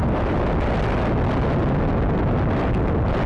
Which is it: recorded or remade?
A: recorded